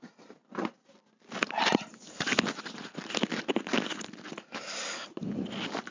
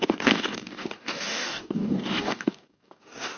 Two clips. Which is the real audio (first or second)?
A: first